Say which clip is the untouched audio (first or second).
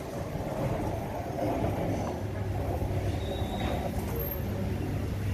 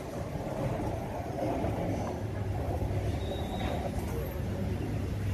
first